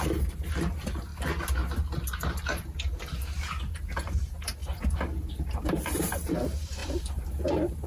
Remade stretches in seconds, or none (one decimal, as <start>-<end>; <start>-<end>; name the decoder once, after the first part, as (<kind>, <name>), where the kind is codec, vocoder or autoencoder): 0.0-1.1 (vocoder, BigVGAN v2); 3.7-7.9